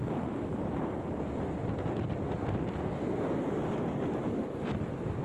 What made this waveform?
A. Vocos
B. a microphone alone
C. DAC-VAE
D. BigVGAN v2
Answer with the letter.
B